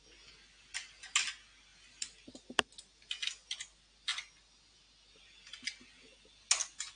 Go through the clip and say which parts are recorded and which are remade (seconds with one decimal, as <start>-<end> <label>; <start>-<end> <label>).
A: 0.0-7.0 recorded